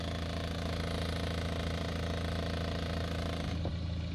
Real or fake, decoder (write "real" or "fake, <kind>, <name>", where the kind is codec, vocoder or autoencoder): real